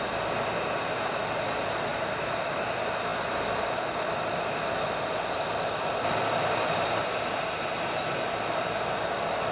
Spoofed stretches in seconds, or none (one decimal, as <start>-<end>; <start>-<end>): 1.9-2.6